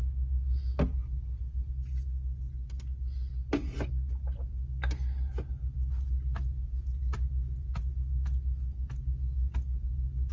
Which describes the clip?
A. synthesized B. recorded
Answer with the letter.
B